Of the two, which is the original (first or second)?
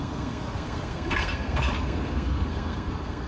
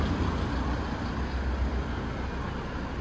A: second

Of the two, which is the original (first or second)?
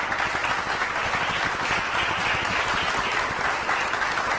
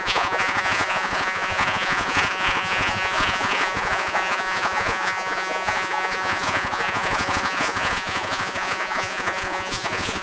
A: first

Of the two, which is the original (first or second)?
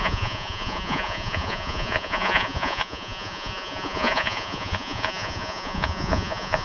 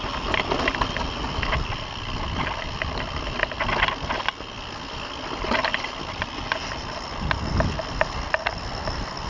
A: second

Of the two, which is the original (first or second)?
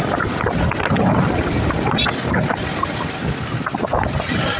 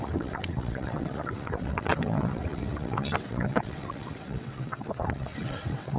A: first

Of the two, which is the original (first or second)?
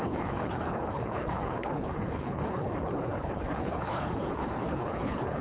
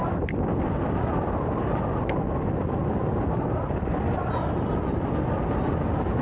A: second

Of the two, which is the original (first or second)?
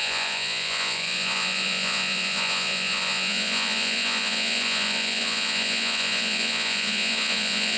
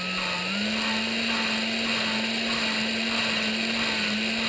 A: second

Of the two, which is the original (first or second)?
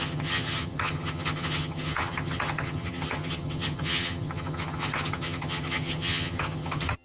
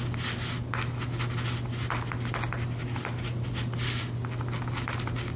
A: second